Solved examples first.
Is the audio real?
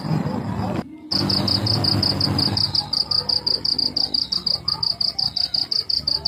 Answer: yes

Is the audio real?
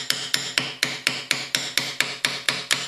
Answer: yes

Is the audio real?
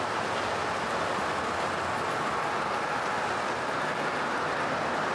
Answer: yes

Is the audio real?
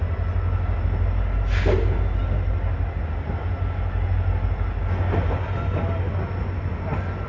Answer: yes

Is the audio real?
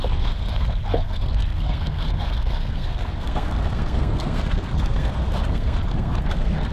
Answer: no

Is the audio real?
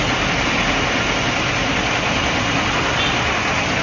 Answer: yes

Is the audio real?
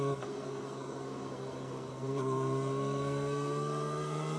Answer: no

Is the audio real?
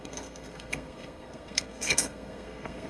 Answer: no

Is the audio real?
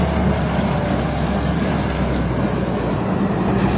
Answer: yes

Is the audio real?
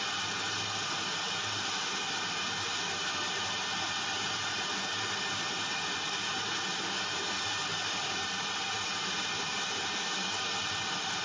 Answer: yes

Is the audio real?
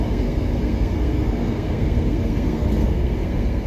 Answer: no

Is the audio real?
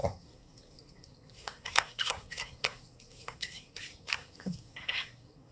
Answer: no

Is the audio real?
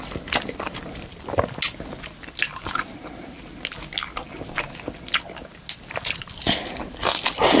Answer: yes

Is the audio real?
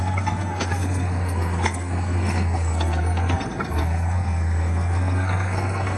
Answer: no